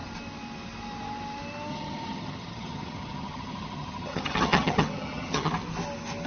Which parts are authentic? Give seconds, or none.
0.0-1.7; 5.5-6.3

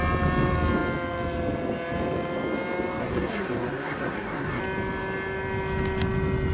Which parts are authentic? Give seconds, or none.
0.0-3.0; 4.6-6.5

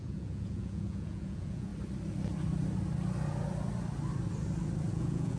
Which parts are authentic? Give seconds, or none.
1.7-4.9